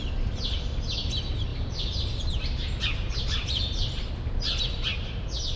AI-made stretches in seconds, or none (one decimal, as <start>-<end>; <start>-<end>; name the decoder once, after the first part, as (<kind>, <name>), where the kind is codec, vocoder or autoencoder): 1.5-2.2 (vocoder, BigVGAN v2); 2.6-4.1; 4.9-5.6